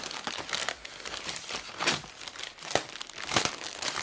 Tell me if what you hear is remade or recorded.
recorded